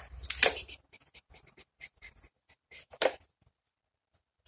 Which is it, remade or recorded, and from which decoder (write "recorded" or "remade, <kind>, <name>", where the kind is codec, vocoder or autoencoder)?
remade, vocoder, BigVGAN v2